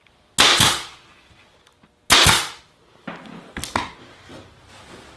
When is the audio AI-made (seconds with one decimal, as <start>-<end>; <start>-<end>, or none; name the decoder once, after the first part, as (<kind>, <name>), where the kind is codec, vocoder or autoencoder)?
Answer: none